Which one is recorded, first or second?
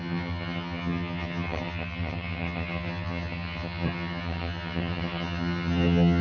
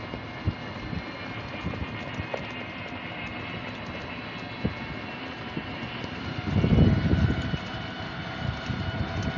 second